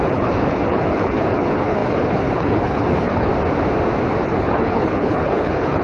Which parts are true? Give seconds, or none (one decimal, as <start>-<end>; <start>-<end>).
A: 3.3-4.2